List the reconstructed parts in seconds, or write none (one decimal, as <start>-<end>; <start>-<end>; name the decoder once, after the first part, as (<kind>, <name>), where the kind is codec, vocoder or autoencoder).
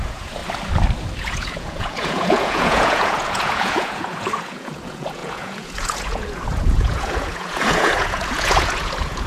0.0-0.4 (vocoder, Vocos); 1.2-9.3